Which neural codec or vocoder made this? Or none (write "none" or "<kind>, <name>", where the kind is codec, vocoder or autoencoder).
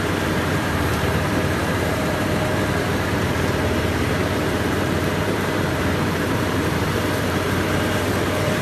vocoder, BigVGAN v2